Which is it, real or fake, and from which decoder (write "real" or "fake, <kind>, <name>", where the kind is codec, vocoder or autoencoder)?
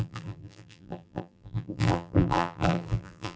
fake, vocoder, BigVGAN v2